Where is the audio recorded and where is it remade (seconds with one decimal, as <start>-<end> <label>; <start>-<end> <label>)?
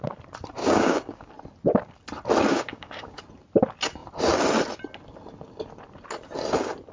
0.0-0.6 recorded; 0.6-1.3 remade; 1.3-2.5 recorded; 2.5-3.2 remade; 3.2-6.9 recorded